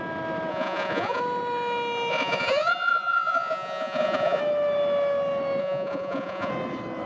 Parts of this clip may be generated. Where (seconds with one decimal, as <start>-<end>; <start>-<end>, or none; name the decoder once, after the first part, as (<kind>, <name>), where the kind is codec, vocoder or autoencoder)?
0.5-1.2 (vocoder, Vocos); 2.1-4.4; 5.6-6.5